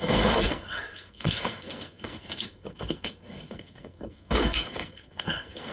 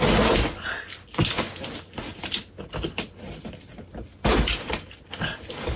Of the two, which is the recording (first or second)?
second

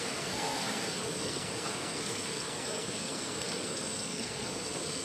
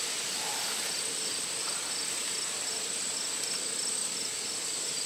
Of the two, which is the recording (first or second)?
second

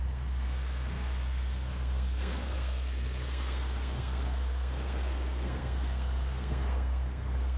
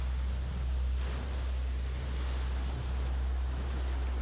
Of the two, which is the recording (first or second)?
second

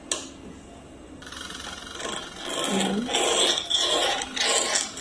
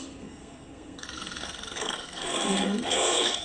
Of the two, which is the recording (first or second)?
first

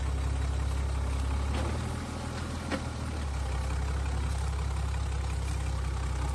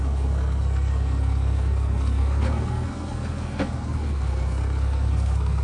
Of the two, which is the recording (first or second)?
first